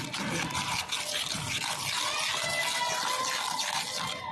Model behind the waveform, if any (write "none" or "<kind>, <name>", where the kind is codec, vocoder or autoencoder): none